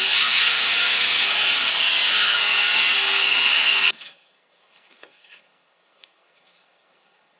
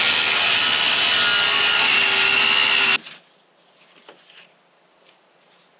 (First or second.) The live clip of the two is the second